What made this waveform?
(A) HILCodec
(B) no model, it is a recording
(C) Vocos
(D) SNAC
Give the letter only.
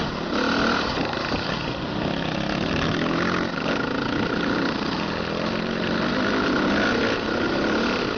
B